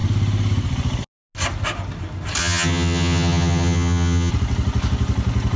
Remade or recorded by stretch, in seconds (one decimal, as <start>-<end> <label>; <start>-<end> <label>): 0.0-2.4 recorded; 2.4-4.3 remade; 4.3-5.6 recorded